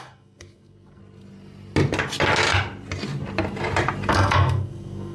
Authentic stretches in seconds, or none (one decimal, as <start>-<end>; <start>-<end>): 1.0-4.1